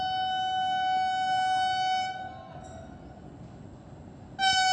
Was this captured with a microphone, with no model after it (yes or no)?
yes